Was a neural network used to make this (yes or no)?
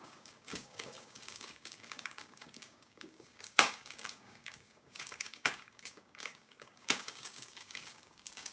yes